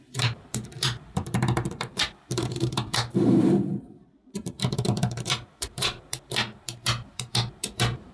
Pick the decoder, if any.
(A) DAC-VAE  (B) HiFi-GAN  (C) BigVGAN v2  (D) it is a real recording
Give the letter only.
C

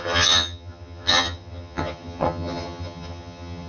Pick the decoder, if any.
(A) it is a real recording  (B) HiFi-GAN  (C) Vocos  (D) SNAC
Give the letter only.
B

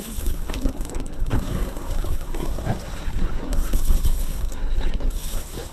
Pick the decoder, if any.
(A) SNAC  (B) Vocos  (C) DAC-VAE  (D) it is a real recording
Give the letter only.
A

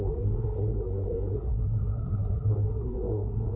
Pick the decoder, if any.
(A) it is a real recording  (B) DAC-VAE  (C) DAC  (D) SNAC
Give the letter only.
D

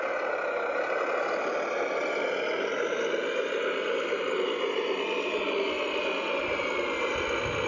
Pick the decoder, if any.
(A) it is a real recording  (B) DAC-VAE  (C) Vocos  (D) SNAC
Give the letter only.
A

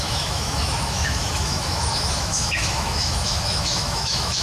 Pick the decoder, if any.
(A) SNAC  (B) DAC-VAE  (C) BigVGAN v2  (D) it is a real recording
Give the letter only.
B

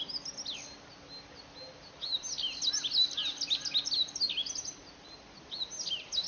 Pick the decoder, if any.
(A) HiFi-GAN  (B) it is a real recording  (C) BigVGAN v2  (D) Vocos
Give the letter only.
B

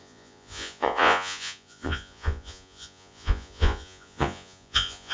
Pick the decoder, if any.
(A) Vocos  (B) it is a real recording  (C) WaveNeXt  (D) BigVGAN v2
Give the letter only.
A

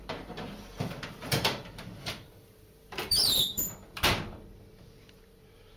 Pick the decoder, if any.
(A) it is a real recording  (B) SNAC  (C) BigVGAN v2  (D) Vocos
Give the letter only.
C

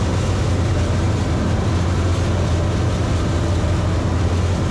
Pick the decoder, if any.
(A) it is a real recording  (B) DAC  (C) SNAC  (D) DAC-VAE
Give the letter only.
A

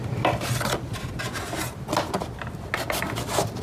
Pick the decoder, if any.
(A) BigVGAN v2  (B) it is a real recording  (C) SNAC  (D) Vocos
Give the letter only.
B